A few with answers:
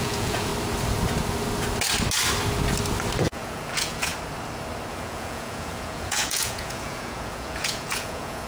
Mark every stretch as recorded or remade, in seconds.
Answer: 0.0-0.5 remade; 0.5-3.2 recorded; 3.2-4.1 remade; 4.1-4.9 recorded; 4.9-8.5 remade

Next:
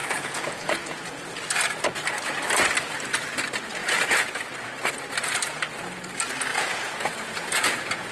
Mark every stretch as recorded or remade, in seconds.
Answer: 0.0-1.3 remade; 1.3-3.8 recorded; 3.8-4.4 remade; 4.4-6.5 recorded; 6.5-8.1 remade

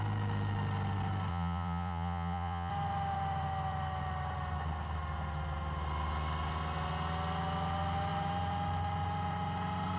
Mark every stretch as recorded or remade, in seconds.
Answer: 0.0-1.3 recorded; 1.3-2.7 remade; 2.7-10.0 recorded